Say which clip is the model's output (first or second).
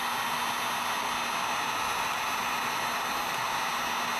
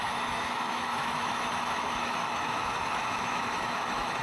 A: second